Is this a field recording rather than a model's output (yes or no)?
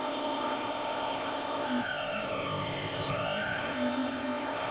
no